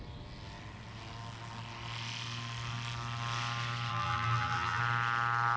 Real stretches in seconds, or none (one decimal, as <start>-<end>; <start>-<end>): 0.0-3.9; 4.8-5.6